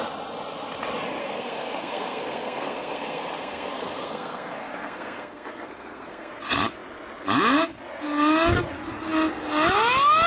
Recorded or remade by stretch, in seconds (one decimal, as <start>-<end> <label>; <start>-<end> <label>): 0.0-1.2 recorded; 1.2-6.3 remade; 6.3-10.3 recorded